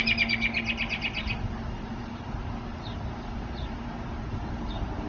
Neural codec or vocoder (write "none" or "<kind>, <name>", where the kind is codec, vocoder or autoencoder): none